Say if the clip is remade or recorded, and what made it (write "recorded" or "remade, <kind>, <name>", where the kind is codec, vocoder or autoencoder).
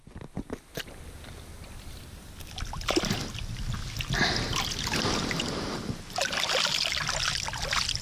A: recorded